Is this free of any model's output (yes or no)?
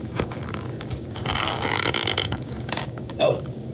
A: no